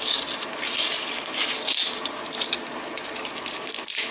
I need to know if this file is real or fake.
real